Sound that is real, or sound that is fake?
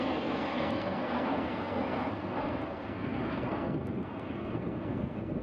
fake